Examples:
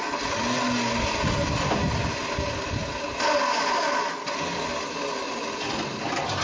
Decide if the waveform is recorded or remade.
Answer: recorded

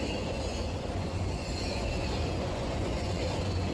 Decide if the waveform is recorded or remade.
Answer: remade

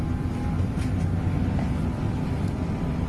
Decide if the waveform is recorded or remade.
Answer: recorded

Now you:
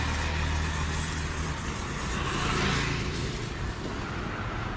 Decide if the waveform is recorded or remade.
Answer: recorded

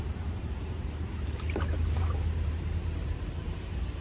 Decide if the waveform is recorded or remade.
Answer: remade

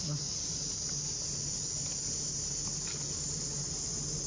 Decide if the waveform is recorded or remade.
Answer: recorded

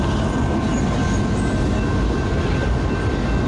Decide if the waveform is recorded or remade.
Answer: recorded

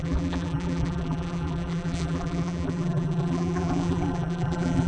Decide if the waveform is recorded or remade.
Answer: remade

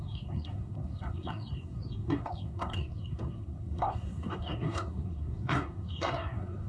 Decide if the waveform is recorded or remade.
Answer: remade